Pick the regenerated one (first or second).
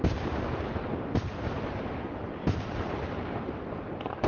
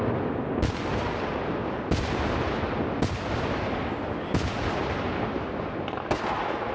first